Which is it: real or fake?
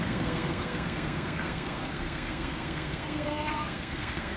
fake